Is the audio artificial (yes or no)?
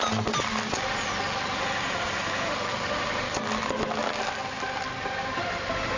no